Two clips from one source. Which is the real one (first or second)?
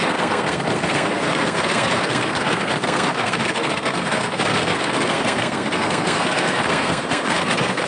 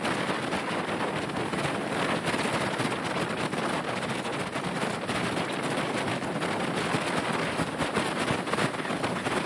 second